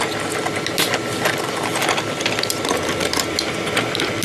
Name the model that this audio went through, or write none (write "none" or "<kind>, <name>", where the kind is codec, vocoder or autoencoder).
none